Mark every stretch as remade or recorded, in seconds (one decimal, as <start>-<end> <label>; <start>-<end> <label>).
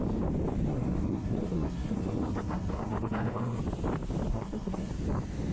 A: 0.0-0.7 recorded; 0.7-3.6 remade; 3.6-4.3 recorded; 4.3-4.9 remade; 4.9-5.5 recorded